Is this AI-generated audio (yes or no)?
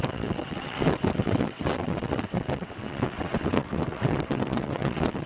yes